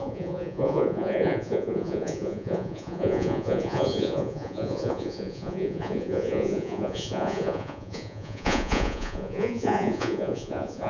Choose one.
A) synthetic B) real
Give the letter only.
A